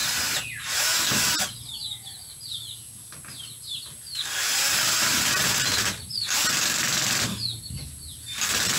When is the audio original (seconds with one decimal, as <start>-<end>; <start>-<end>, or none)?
0.0-8.8